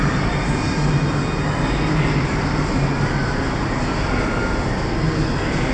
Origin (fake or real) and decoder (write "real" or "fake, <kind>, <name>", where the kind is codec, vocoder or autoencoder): real